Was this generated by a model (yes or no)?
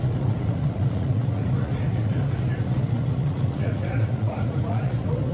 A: yes